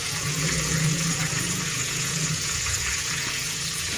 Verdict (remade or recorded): remade